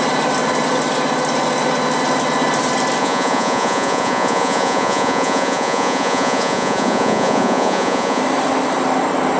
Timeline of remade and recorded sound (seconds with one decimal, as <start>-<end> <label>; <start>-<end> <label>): 0.0-3.0 recorded; 3.0-8.2 remade; 8.2-9.4 recorded